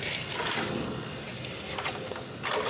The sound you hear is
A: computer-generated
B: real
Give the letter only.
B